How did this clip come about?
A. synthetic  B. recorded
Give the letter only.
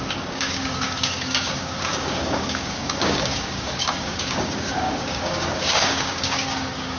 A